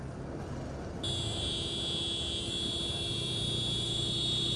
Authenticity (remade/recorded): recorded